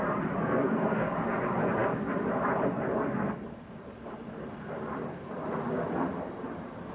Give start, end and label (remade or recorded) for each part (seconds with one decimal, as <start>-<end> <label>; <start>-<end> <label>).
0.0-0.4 recorded; 0.4-1.0 remade; 1.0-6.9 recorded